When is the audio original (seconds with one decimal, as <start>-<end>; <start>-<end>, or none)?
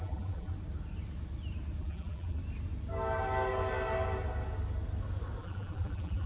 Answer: 0.5-1.8; 2.4-5.4